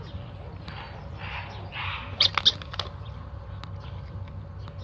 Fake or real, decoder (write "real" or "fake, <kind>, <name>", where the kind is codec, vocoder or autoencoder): real